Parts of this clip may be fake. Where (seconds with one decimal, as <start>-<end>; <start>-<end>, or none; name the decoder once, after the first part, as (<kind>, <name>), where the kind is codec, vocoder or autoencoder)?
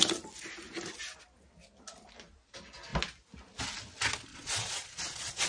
4.3-5.5 (vocoder, Vocos)